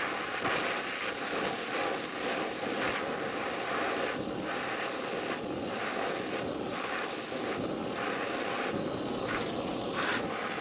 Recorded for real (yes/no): yes